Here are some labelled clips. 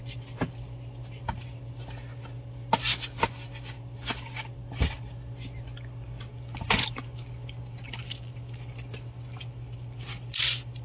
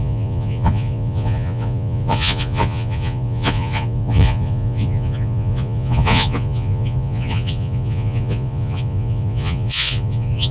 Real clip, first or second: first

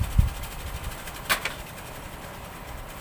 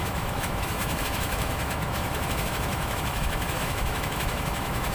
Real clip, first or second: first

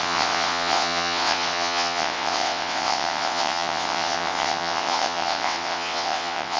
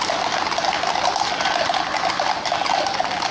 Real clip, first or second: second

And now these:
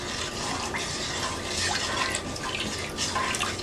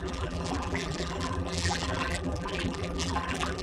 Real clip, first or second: first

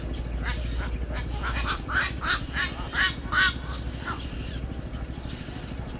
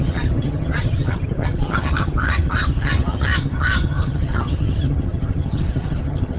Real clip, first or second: first